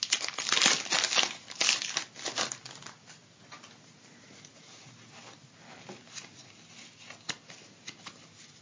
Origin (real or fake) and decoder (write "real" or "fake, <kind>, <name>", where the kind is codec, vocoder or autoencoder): real